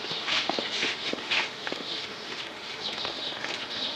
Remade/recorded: remade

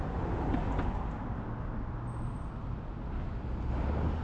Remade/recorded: recorded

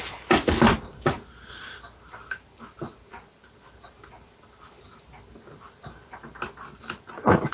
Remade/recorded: recorded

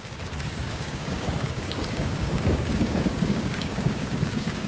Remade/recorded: remade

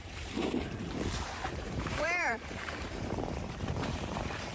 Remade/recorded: remade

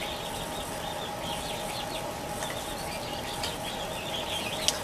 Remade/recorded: recorded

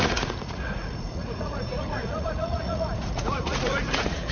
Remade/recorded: remade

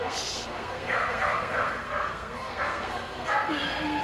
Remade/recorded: remade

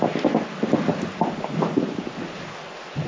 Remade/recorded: recorded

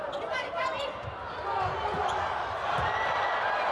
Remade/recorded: recorded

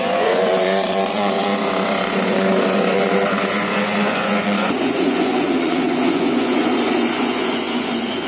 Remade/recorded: remade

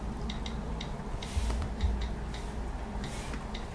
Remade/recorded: recorded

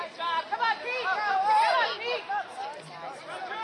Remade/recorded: recorded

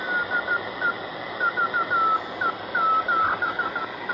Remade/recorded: recorded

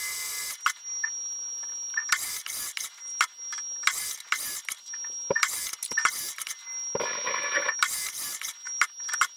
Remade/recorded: recorded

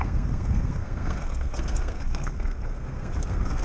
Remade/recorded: remade